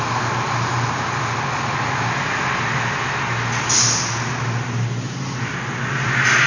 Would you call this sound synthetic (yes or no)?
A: no